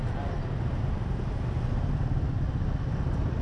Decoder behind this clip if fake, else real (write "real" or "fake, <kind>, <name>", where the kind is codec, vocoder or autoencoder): real